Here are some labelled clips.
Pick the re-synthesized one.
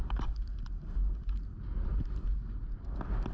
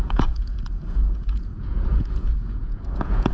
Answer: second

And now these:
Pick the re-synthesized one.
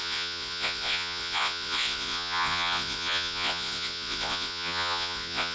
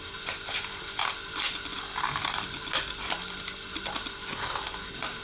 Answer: first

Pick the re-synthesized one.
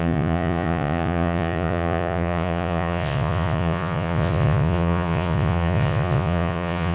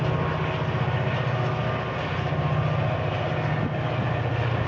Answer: first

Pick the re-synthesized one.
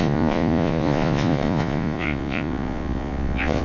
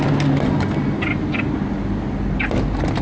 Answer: first